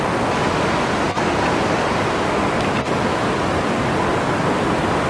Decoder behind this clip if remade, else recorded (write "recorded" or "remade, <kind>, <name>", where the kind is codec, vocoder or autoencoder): recorded